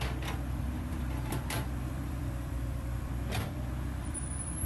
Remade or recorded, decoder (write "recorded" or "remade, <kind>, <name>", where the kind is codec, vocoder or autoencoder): remade, vocoder, BigVGAN v2